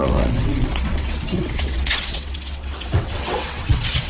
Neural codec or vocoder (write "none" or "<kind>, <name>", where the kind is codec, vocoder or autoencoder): vocoder, WaveNeXt